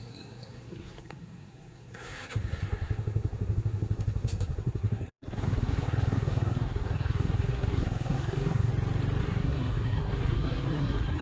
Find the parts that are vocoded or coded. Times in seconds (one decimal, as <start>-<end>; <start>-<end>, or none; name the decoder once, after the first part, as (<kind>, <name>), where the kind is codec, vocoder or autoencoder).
0.0-8.7 (codec, SNAC); 9.2-11.2